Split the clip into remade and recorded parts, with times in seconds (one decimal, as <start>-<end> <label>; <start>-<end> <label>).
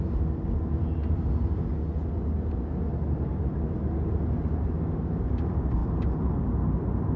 0.0-2.9 recorded; 2.9-3.9 remade; 3.9-7.2 recorded